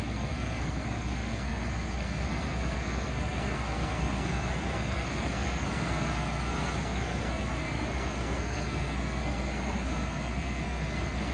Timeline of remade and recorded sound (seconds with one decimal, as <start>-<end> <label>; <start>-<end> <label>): 0.0-11.3 remade